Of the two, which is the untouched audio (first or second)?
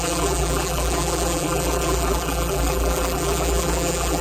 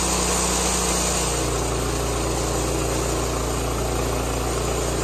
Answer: second